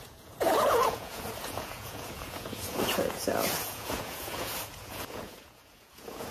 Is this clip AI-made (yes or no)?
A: yes